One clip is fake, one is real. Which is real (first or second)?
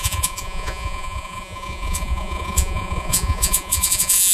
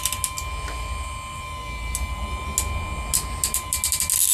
second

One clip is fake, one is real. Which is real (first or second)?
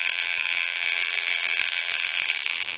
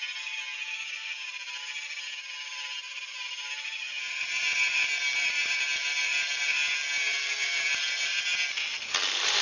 second